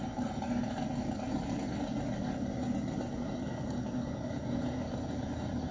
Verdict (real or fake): real